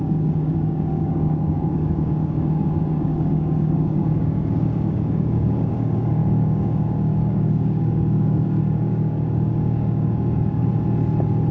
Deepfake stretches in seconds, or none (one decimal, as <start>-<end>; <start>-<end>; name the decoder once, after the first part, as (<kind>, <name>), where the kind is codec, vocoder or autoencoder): 0.0-10.7 (codec, DAC)